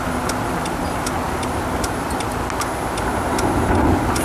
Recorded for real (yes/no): yes